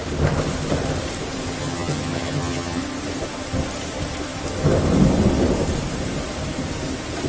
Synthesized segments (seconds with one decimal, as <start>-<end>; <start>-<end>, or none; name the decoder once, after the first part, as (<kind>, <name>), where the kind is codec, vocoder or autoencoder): 1.6-2.8 (vocoder, HiFi-GAN)